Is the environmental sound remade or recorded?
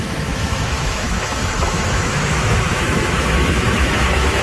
remade